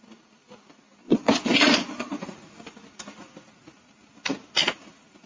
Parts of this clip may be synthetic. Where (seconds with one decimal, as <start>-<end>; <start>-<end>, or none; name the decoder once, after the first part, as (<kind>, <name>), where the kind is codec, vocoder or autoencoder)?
1.0-2.2 (vocoder, Vocos)